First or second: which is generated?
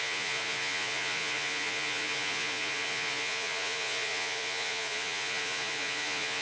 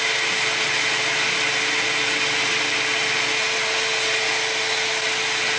first